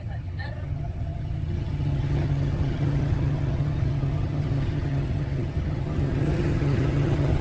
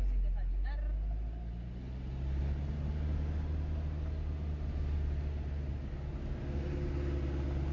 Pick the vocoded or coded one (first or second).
first